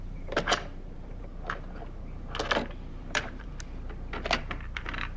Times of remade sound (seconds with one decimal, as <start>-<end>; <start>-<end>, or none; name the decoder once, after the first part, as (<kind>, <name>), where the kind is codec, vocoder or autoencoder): 0.0-1.3 (vocoder, BigVGAN v2); 2.9-3.5; 4.4-5.2